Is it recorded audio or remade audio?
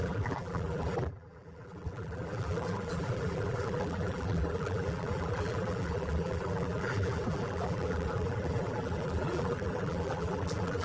remade